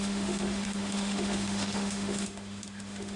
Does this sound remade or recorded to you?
remade